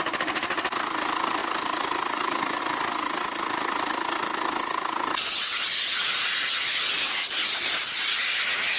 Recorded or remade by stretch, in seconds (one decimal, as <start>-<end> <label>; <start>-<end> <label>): 0.0-1.4 recorded; 1.4-2.6 remade; 2.6-8.8 recorded